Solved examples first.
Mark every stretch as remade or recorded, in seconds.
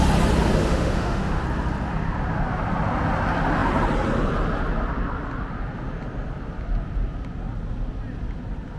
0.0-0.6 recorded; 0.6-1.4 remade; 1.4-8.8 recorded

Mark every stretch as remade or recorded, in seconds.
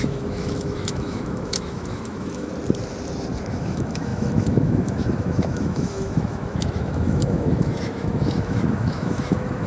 0.0-2.5 remade; 2.5-3.5 recorded; 3.5-9.7 remade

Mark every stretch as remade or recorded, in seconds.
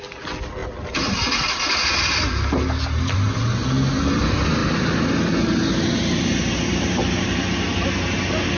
0.0-8.6 recorded